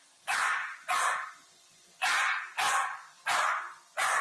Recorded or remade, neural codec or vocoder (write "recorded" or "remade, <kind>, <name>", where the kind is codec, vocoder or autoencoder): remade, vocoder, Vocos